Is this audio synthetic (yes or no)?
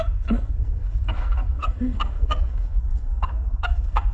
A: yes